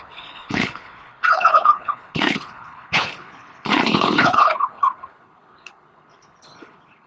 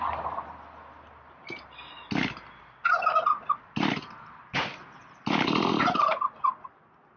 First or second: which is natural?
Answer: second